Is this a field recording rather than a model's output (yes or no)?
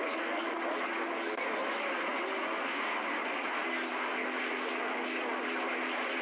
yes